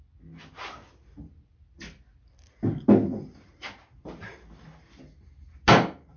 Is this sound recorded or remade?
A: recorded